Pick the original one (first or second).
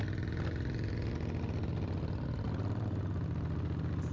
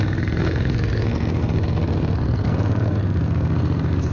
first